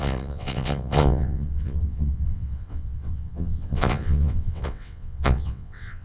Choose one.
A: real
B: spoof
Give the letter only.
B